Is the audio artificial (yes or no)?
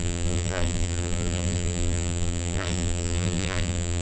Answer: yes